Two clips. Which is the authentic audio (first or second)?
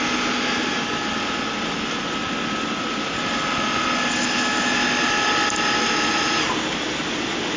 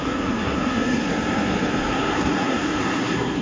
first